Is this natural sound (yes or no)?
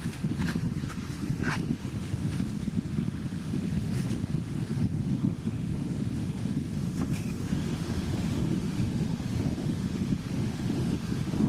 no